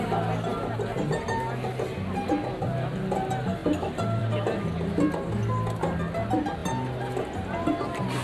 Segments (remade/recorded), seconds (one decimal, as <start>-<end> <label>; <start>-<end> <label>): 0.0-8.2 recorded